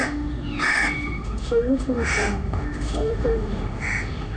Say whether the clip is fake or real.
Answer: fake